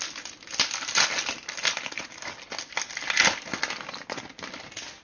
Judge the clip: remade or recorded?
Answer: recorded